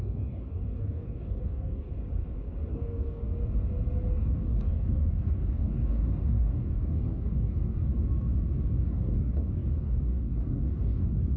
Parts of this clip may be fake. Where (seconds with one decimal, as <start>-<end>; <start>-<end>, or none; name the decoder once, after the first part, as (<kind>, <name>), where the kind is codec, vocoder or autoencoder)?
0.0-1.9 (codec, DAC); 2.7-3.3; 4.1-7.9; 8.8-11.4